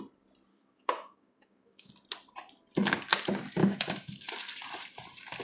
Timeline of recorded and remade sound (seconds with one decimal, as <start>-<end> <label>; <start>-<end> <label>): 0.0-0.5 recorded; 0.5-1.9 remade; 1.9-3.6 recorded; 3.6-4.3 remade; 4.3-5.4 recorded